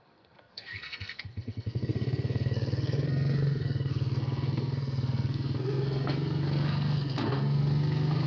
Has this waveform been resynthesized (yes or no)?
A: yes